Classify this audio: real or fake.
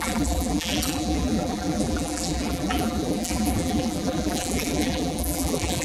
fake